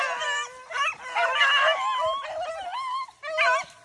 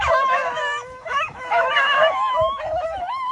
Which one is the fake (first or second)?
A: second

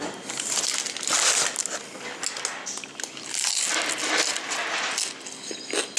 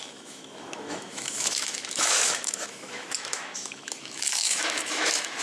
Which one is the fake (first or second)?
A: second